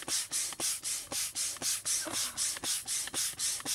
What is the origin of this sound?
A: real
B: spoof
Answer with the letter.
A